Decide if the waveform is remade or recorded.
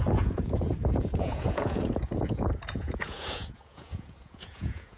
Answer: remade